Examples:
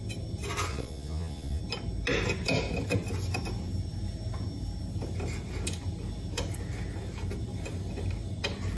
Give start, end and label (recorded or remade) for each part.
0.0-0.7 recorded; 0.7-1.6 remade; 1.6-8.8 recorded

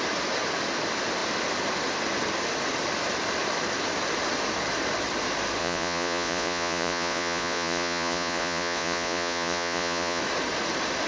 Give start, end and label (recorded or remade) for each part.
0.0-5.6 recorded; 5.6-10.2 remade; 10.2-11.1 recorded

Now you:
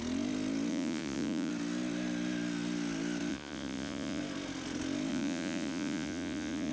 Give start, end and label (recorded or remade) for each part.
0.0-0.7 recorded; 0.7-1.5 remade; 1.5-3.3 recorded; 3.3-4.2 remade; 4.2-5.1 recorded; 5.1-6.7 remade

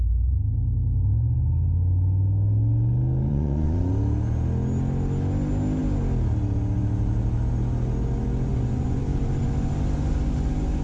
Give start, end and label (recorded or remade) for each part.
0.0-3.3 recorded; 3.3-3.9 remade; 3.9-8.5 recorded; 8.5-9.0 remade; 9.0-10.8 recorded